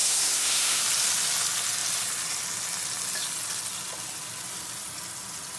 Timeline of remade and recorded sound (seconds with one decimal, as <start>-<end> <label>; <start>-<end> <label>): 0.0-0.8 remade; 0.8-5.6 recorded